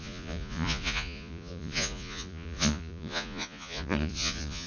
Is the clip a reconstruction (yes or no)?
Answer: yes